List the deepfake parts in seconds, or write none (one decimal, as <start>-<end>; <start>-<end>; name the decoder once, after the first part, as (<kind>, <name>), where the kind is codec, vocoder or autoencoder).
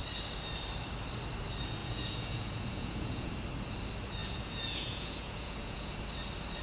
1.8-3.3 (vocoder, Vocos); 4.2-6.0